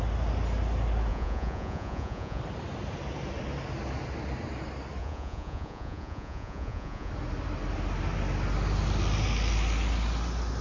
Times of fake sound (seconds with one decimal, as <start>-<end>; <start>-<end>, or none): 1.1-2.4; 5.0-7.1